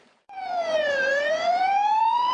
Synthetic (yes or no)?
yes